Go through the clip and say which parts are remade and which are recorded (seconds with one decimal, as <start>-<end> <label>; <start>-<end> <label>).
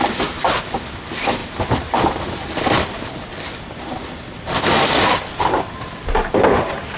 0.0-7.0 recorded